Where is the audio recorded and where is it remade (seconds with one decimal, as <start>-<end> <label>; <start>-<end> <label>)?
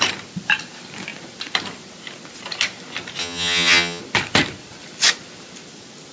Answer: 0.0-3.2 recorded; 3.2-4.0 remade; 4.0-6.1 recorded